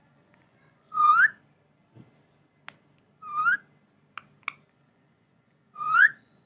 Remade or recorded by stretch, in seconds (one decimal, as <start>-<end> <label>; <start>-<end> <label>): 0.0-1.1 remade; 1.1-4.7 recorded; 4.7-6.5 remade